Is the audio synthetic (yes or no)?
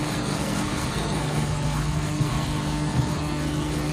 yes